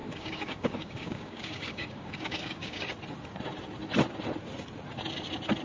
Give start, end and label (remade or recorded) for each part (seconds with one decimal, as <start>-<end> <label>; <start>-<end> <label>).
0.0-2.8 remade; 2.8-5.6 recorded